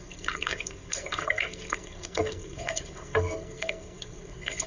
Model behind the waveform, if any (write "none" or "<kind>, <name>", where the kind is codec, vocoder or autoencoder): codec, SNAC